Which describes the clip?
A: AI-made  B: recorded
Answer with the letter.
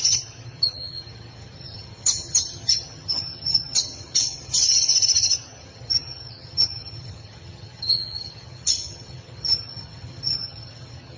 A